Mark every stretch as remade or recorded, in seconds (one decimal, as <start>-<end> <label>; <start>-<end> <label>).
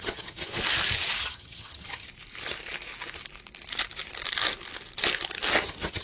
0.0-0.6 remade; 0.6-1.2 recorded; 1.2-2.1 remade; 2.1-5.6 recorded; 5.6-6.0 remade